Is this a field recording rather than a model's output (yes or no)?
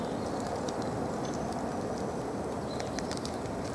yes